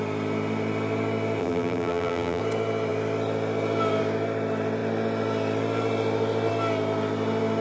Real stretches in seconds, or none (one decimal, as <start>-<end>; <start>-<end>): 0.0-1.4; 2.4-7.6